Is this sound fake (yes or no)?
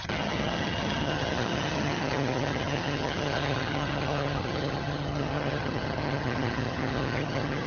yes